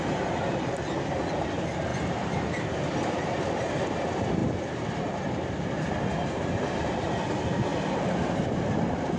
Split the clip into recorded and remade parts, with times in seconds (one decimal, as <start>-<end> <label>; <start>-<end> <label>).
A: 0.0-7.7 recorded; 7.7-8.4 remade; 8.4-9.2 recorded